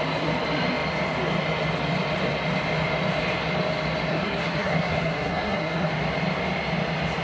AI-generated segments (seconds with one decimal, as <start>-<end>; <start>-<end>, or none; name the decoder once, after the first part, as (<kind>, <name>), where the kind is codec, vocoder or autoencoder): 4.1-5.9 (codec, SNAC)